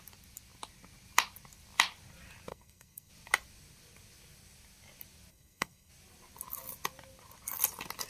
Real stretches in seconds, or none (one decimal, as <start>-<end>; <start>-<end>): 0.0-2.5; 3.1-5.3; 5.9-8.1